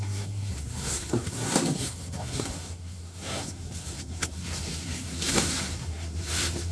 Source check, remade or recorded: remade